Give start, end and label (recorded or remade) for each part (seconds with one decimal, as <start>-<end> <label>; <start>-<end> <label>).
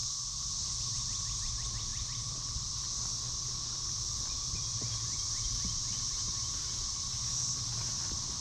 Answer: 0.0-0.8 remade; 0.8-1.9 recorded; 1.9-5.2 remade; 5.2-8.4 recorded